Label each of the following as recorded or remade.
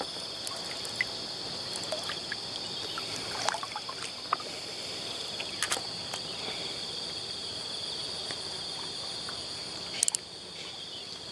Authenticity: recorded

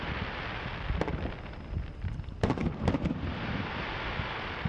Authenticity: recorded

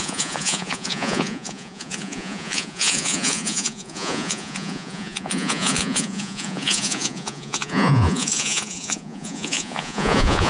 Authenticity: remade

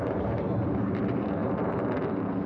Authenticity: remade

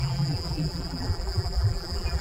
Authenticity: remade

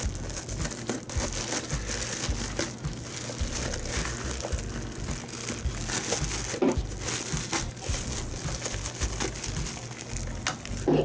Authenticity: recorded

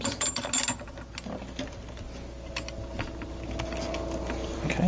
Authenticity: recorded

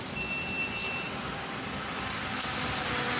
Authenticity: recorded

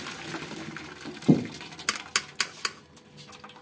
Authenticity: recorded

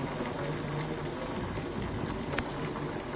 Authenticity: recorded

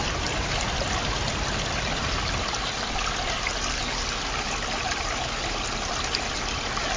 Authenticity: recorded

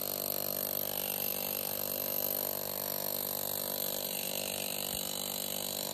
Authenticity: recorded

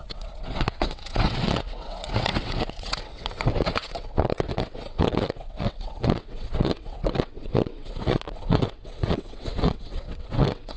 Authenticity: remade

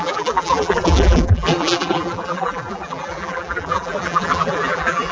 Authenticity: remade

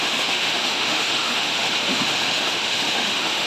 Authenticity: remade